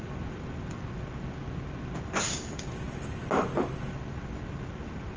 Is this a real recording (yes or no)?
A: yes